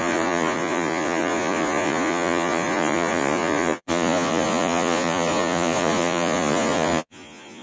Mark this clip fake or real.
fake